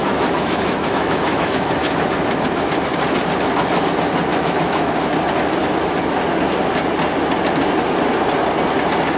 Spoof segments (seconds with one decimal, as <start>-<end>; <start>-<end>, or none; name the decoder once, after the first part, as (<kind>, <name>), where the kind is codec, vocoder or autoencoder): 0.0-1.7 (autoencoder, DAC-VAE); 4.3-4.9; 5.6-6.2